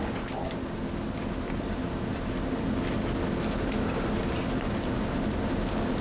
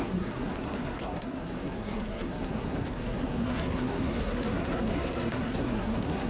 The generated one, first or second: second